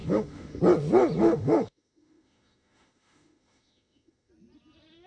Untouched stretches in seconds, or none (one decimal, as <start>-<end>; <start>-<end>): 0.6-1.2; 4.3-5.1